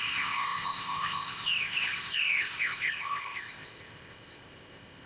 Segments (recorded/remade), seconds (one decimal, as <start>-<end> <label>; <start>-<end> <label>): 0.0-5.1 remade